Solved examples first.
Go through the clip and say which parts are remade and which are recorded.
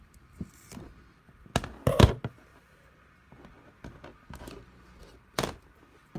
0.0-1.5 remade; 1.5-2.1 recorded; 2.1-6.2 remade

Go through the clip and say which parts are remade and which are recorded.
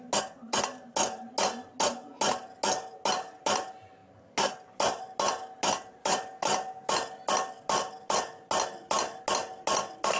0.0-10.2 recorded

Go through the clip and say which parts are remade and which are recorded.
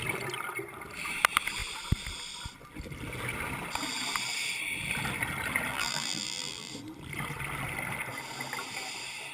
0.0-5.7 recorded; 5.7-6.7 remade; 6.7-9.3 recorded